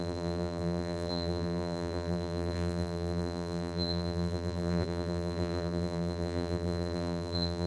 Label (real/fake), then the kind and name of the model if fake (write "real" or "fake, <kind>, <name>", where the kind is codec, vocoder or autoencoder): fake, vocoder, BigVGAN v2